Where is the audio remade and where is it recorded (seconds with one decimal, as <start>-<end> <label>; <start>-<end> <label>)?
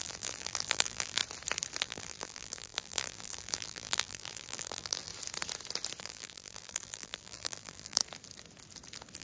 0.0-1.2 remade; 1.2-1.8 recorded; 1.8-5.1 remade; 5.1-6.0 recorded; 6.0-8.0 remade; 8.0-9.2 recorded